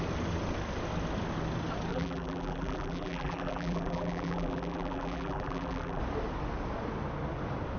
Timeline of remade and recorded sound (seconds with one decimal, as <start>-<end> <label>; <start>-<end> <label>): 0.0-1.9 recorded; 1.9-6.0 remade; 6.0-7.8 recorded